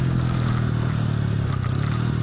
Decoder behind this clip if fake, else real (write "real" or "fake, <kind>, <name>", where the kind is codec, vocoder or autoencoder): real